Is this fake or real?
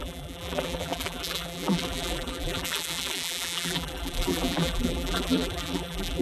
fake